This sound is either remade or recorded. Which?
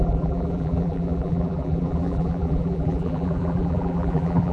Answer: remade